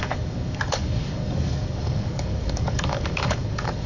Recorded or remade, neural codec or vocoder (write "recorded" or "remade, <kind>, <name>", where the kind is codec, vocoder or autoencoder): remade, codec, DAC